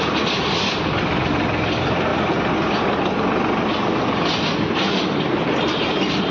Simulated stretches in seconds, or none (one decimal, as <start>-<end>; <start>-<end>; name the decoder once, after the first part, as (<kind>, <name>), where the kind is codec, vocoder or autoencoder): none